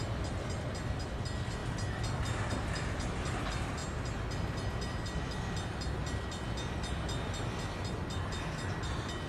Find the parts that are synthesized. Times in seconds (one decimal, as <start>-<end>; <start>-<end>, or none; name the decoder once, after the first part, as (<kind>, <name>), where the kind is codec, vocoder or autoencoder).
none